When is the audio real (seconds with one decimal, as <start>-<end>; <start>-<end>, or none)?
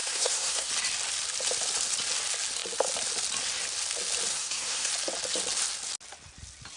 0.7-4.3; 4.9-6.8